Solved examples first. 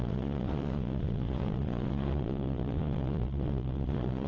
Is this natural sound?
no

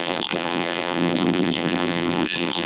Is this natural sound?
no